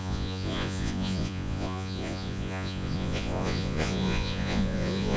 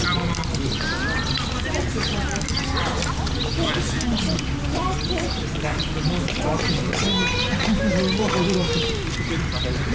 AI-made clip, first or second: first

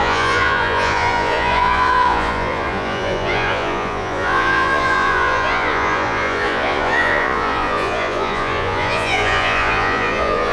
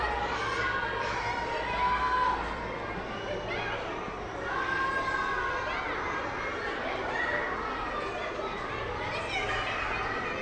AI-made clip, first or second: first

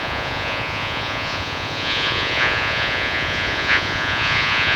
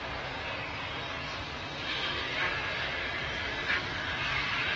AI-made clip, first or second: first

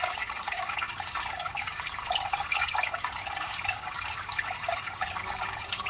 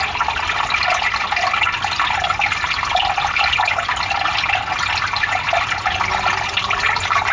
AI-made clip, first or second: first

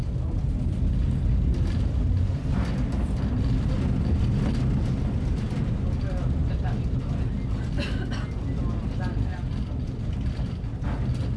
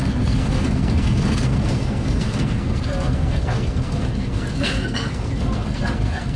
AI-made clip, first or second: second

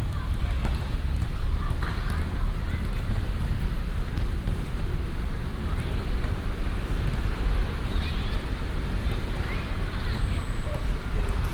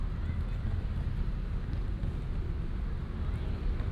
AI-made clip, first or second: first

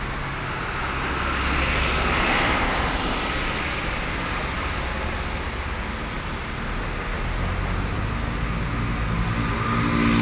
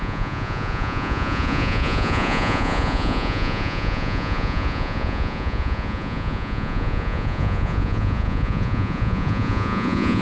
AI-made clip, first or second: second